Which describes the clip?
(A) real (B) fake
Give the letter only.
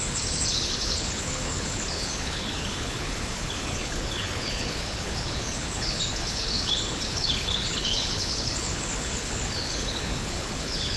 B